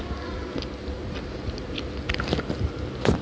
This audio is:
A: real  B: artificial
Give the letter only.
A